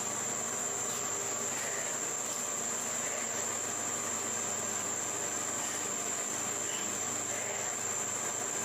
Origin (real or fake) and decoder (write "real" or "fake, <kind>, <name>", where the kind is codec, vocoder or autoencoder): real